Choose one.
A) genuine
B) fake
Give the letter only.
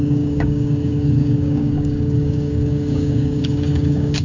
B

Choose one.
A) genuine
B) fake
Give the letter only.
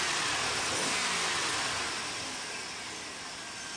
A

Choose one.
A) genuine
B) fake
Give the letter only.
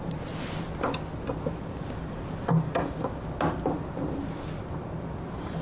A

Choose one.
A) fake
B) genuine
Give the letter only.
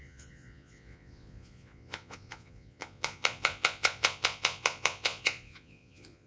A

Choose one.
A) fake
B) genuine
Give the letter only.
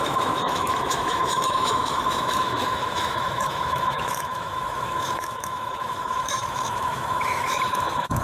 A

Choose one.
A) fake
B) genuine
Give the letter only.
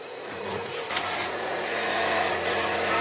A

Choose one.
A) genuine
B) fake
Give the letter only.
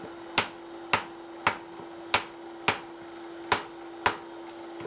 A